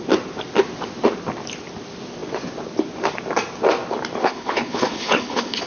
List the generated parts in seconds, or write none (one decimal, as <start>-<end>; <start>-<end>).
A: 4.2-5.7

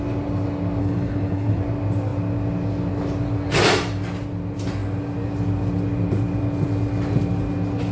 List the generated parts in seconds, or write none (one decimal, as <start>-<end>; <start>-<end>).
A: 0.8-1.6

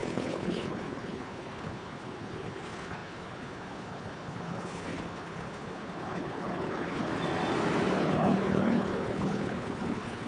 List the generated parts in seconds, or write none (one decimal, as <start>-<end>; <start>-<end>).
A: 0.0-7.1; 8.0-10.3

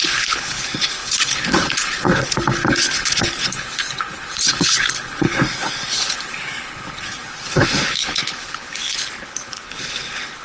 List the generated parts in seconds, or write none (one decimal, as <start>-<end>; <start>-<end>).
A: 0.0-10.4

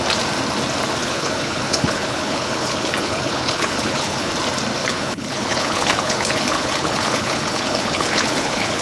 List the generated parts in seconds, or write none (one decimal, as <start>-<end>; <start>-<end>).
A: 1.0-4.3; 4.8-8.8

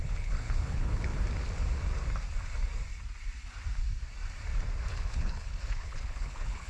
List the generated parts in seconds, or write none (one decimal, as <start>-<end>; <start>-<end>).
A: 0.0-1.1; 4.9-6.7

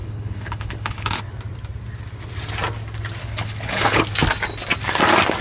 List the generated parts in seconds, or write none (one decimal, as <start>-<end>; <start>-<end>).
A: 0.0-1.2; 3.2-4.0